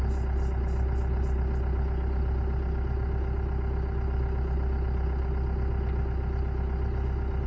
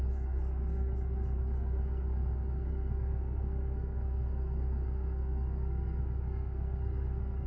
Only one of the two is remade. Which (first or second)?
second